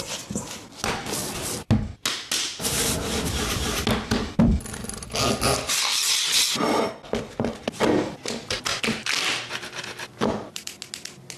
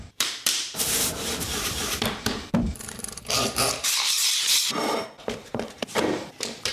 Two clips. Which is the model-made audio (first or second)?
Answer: second